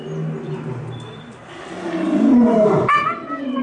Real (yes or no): yes